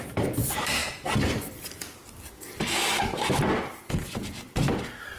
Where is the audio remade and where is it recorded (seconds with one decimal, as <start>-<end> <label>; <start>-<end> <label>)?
0.0-0.8 remade; 0.8-1.5 recorded; 1.5-2.0 remade; 2.0-3.7 recorded; 3.7-5.2 remade